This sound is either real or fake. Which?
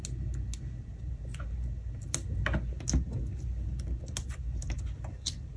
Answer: real